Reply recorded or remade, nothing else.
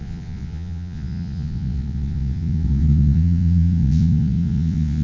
remade